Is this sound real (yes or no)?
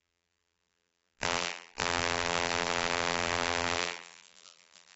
no